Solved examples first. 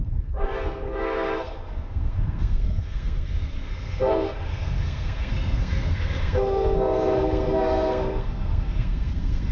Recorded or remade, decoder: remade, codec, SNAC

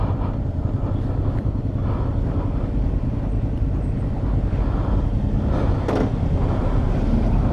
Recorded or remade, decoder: recorded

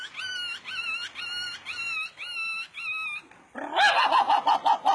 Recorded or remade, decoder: recorded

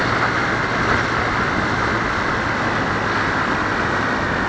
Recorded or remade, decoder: recorded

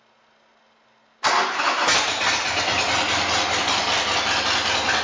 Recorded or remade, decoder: recorded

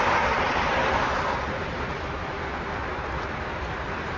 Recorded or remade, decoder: recorded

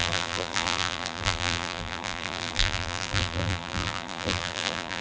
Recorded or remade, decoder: remade, vocoder, BigVGAN v2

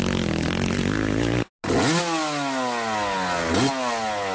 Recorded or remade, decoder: recorded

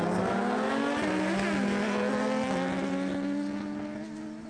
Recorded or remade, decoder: recorded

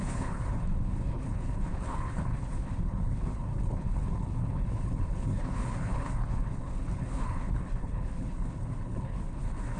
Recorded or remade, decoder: remade, codec, HILCodec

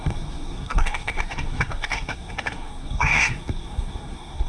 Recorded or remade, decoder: remade, codec, SNAC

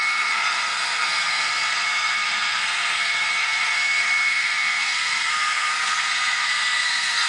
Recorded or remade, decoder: remade, codec, SNAC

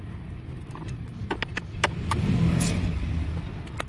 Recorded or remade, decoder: recorded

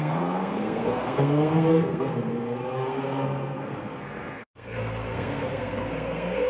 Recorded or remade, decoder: remade, codec, SNAC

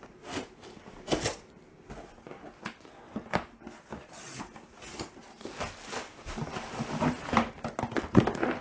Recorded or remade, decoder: recorded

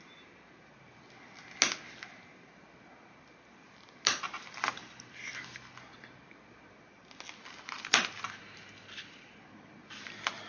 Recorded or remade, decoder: recorded